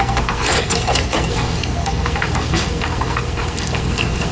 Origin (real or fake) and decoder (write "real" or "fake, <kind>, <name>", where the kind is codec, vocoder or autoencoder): fake, codec, SNAC